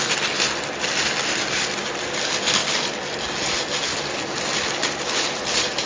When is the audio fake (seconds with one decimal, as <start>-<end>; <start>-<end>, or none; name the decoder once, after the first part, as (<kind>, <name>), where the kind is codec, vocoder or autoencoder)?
none